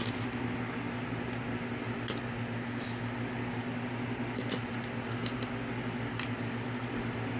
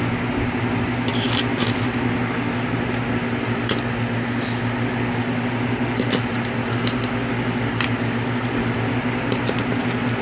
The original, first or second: first